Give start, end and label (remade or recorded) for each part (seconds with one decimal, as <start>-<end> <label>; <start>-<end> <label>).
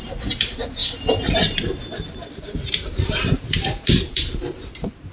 0.0-0.8 remade; 0.8-2.4 recorded; 2.4-5.1 remade